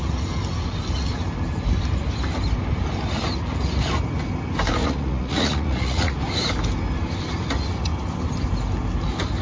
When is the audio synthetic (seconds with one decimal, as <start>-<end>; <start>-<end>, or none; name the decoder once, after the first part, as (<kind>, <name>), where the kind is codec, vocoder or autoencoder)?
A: 4.8-6.2 (vocoder, Vocos)